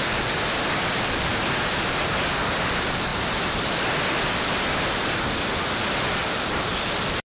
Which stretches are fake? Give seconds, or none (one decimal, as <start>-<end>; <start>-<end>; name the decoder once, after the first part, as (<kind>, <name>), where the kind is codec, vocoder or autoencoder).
none